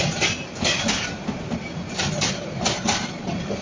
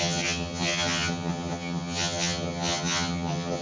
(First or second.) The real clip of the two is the first